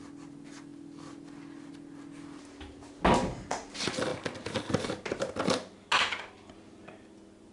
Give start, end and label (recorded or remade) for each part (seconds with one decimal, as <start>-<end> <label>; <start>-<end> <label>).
0.0-7.5 recorded